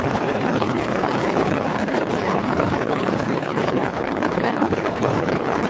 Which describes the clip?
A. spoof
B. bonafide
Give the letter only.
A